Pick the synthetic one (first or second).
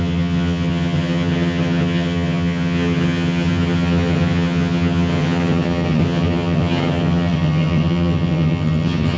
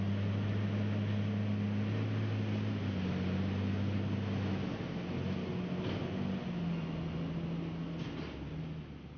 first